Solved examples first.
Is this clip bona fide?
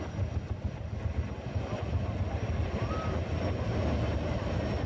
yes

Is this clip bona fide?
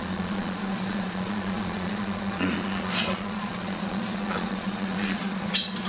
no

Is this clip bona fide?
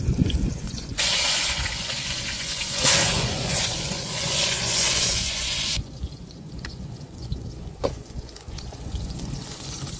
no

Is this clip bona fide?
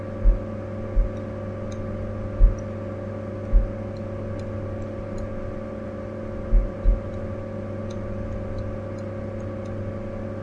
yes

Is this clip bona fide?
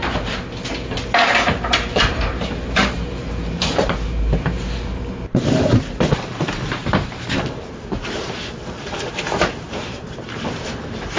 no